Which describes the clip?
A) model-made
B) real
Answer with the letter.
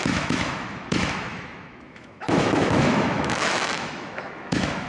A